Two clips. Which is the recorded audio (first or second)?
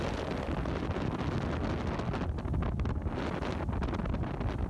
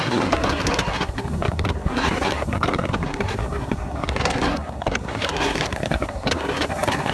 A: first